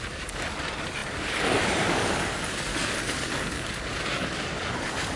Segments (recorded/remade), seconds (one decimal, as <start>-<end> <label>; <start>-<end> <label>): 0.0-5.2 remade